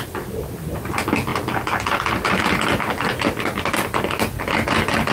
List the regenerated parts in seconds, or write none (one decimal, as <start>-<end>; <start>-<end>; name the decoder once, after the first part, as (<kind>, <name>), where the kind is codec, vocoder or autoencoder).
none